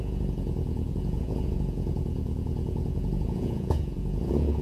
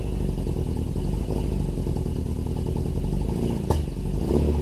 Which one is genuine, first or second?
second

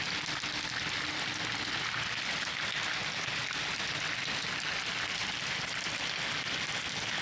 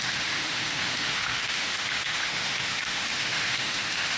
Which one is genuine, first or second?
first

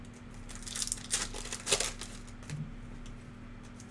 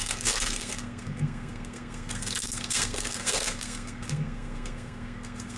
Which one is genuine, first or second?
first